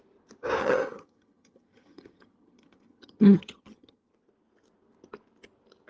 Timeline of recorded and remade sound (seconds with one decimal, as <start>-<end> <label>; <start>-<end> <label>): 0.0-0.6 recorded; 0.6-4.1 remade; 4.1-5.9 recorded

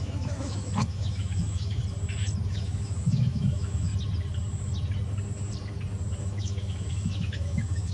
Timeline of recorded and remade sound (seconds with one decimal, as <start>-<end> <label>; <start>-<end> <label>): 0.0-1.8 remade; 1.8-2.5 recorded; 2.5-3.9 remade; 3.9-6.2 recorded; 6.2-7.9 remade

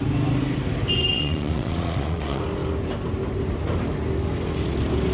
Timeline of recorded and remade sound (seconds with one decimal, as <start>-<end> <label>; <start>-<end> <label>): 0.0-1.1 recorded; 1.1-2.4 remade; 2.4-5.1 recorded

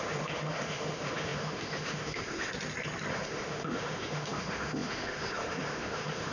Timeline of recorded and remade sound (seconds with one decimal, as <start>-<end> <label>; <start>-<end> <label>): 0.0-2.5 remade; 2.5-3.1 recorded; 3.1-6.3 remade